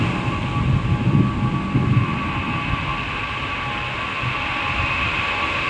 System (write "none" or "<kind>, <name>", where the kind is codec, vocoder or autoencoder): none